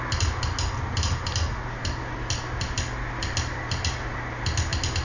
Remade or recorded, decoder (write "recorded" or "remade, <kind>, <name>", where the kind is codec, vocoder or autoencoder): recorded